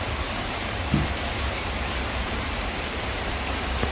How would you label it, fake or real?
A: fake